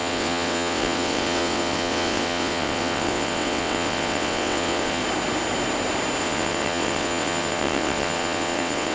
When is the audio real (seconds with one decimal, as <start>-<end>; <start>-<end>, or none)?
5.0-6.2